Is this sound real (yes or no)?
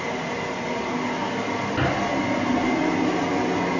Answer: yes